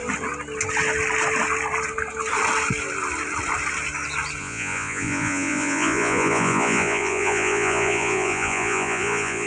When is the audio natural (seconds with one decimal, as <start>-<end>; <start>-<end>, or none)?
0.0-4.4